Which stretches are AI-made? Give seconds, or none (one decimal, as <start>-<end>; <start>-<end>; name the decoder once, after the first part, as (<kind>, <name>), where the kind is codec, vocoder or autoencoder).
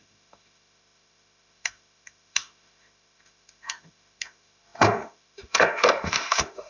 0.0-6.7 (autoencoder, DAC-VAE)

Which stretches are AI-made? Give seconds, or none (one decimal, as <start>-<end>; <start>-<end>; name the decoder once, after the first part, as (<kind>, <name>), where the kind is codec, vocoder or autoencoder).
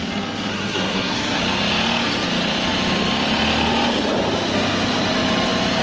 0.5-1.4 (codec, SNAC)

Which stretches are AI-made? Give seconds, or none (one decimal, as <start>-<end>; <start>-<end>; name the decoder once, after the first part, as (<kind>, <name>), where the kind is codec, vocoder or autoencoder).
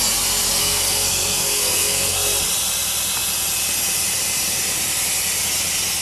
0.6-2.4 (codec, SNAC)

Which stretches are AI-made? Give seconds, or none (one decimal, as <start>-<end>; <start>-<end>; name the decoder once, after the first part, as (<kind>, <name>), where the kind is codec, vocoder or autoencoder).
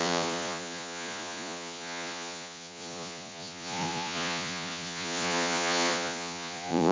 0.0-6.9 (vocoder, Vocos)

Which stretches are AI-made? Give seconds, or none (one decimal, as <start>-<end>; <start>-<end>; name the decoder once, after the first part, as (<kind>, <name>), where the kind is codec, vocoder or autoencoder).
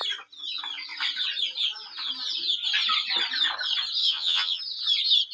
4.0-4.6 (vocoder, HiFi-GAN)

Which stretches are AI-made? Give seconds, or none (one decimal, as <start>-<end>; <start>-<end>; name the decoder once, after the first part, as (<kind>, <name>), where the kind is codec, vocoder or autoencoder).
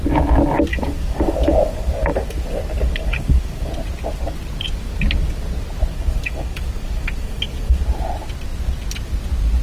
0.7-3.7 (codec, DAC); 5.9-7.8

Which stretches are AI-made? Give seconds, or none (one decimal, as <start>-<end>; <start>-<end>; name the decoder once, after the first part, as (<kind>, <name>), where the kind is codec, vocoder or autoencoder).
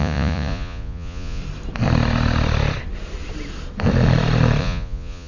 0.0-1.4 (vocoder, Vocos); 4.6-5.3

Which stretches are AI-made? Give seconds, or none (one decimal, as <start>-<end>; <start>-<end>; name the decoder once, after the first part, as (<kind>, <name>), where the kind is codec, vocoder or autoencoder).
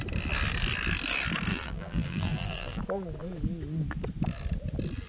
1.5-2.8 (vocoder, BigVGAN v2)